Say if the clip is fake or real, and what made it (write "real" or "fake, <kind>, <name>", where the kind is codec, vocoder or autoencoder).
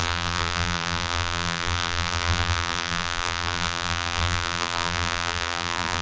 fake, vocoder, BigVGAN v2